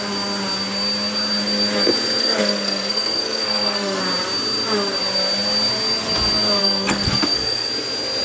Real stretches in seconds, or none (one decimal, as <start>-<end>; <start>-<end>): 0.0-2.2; 4.0-6.6; 7.7-8.2